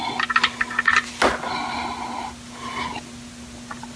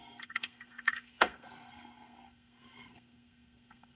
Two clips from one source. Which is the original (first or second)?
first